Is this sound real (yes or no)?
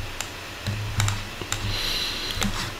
yes